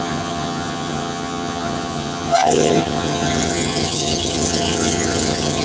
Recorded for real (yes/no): no